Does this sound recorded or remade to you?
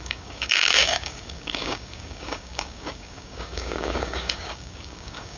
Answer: remade